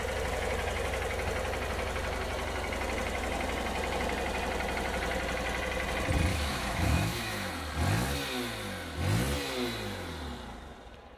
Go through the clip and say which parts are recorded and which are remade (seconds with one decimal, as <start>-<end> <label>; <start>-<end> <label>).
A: 0.0-6.3 recorded; 6.3-7.5 remade; 7.5-11.2 recorded